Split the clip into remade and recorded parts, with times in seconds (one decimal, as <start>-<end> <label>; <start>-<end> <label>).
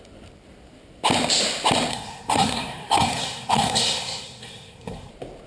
0.0-1.9 recorded; 1.9-5.1 remade; 5.1-5.5 recorded